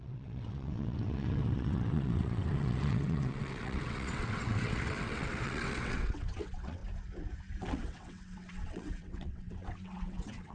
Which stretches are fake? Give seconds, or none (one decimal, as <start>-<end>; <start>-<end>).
0.0-6.8; 7.6-10.5